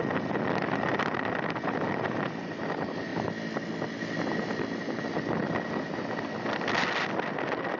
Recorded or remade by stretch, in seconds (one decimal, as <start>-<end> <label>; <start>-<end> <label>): 0.0-7.8 recorded